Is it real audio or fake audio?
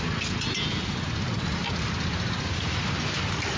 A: real